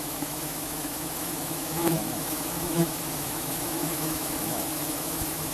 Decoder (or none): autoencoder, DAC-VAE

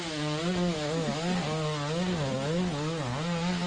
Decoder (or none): none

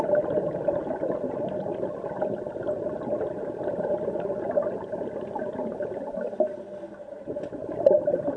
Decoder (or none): none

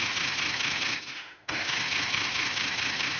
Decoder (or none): autoencoder, DAC-VAE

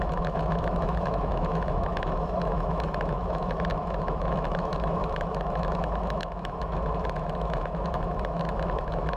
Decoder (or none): autoencoder, DAC-VAE